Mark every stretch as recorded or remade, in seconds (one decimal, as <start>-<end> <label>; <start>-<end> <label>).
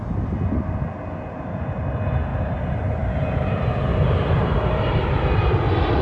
0.0-2.3 recorded; 2.3-5.2 remade; 5.2-6.0 recorded